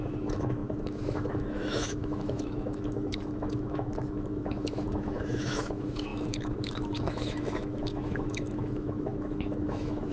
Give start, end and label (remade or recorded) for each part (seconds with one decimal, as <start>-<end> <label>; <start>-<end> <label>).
0.0-10.1 remade